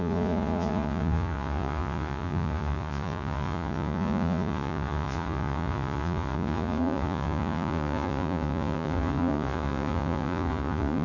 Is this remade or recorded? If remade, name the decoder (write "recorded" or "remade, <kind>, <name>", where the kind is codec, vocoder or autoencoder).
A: remade, vocoder, Vocos